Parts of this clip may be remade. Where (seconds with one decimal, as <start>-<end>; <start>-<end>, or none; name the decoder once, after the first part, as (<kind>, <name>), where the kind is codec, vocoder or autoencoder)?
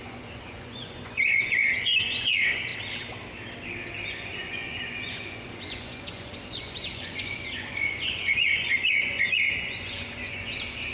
0.0-2.7 (vocoder, Vocos); 4.1-10.9